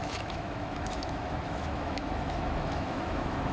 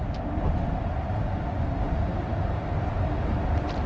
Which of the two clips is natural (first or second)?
second